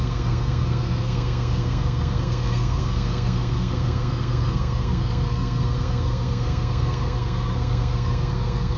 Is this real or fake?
fake